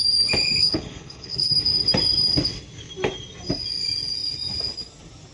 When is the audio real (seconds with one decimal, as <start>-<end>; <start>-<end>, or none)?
0.0-0.6; 1.5-5.3